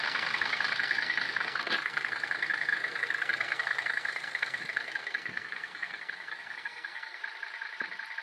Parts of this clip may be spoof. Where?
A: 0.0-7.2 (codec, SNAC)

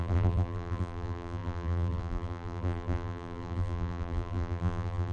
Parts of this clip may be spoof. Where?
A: 0.0-5.1 (vocoder, BigVGAN v2)

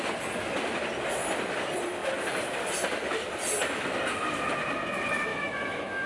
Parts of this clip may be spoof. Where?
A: 5.3-6.1 (autoencoder, DAC-VAE)

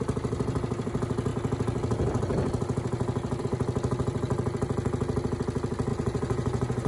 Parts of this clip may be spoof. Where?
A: 5.9-6.9 (vocoder, Vocos)